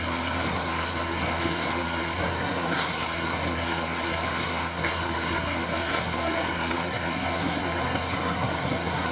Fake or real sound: fake